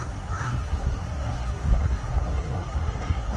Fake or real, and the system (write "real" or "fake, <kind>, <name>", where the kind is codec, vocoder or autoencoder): fake, codec, SNAC